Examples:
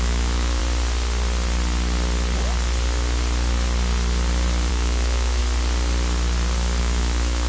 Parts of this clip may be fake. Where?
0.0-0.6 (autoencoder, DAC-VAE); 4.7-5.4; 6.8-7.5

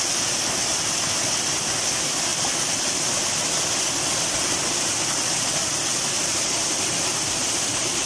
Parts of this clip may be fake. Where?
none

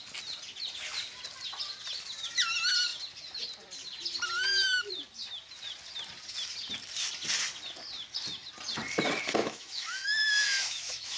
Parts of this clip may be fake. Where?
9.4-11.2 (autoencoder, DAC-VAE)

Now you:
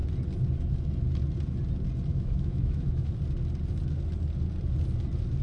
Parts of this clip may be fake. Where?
2.1-3.1 (autoencoder, DAC-VAE)

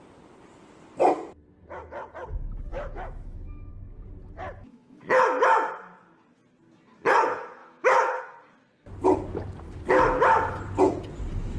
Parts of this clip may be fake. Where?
2.7-3.7 (autoencoder, DAC-VAE); 4.7-5.7; 7.6-8.2

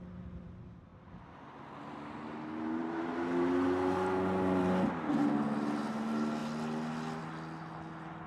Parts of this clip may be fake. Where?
none

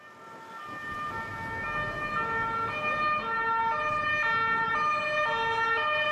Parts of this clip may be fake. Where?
none

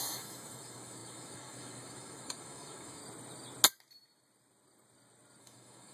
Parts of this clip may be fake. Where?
0.0-3.0 (autoencoder, DAC-VAE); 5.4-5.9